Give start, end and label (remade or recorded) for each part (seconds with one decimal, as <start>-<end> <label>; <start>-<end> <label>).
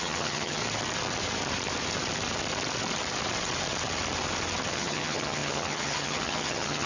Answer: 0.0-0.6 remade; 0.6-4.7 recorded; 4.7-6.9 remade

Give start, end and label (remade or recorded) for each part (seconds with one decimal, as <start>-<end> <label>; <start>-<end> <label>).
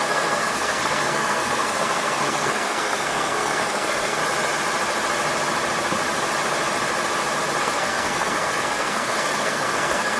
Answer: 0.0-4.2 remade; 4.2-7.6 recorded; 7.6-10.2 remade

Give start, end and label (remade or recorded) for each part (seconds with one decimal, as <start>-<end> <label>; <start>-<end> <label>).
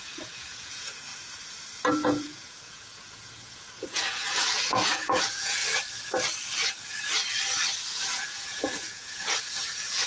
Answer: 0.0-1.1 remade; 1.1-1.9 recorded; 1.9-5.6 remade; 5.6-7.9 recorded; 7.9-10.1 remade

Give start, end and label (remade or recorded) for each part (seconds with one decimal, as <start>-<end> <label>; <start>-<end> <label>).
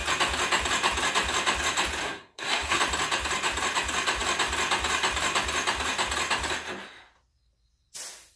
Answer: 0.0-2.0 recorded; 2.0-2.8 remade; 2.8-8.4 recorded